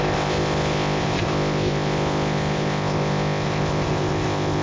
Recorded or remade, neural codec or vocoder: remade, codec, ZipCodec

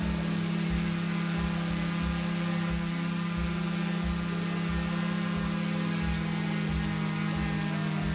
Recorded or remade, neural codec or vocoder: recorded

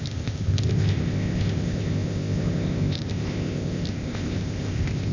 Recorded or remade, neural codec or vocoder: remade, codec, ZipCodec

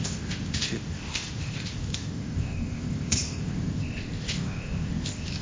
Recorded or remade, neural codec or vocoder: remade, codec, ZipCodec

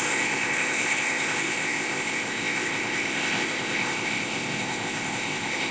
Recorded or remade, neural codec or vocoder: remade, codec, ZipCodec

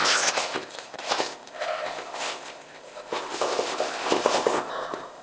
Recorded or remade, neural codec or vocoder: remade, codec, ZipCodec